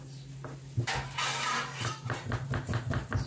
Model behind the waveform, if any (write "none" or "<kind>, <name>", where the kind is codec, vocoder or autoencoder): none